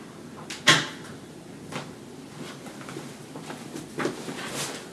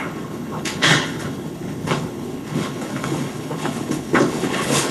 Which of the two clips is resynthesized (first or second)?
second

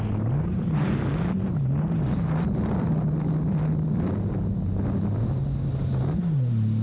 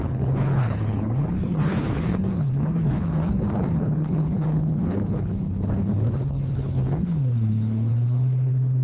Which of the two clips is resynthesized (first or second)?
second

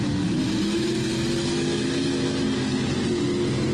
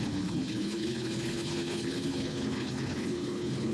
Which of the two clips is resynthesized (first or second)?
second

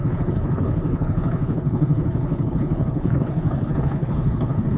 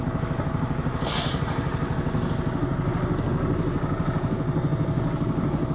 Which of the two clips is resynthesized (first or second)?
first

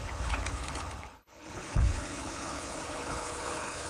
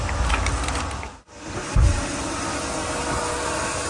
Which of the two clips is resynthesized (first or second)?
first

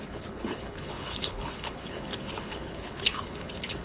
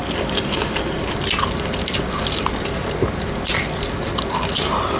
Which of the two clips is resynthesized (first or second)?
first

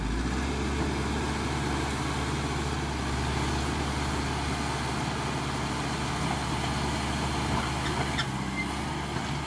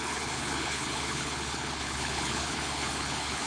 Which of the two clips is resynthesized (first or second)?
second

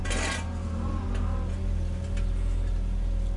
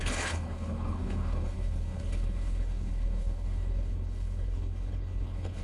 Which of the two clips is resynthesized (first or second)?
second